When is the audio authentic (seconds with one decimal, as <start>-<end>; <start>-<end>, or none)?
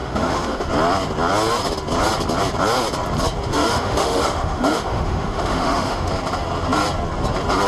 0.7-3.5; 6.1-7.7